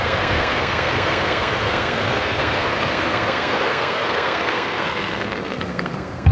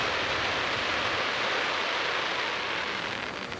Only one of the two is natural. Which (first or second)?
second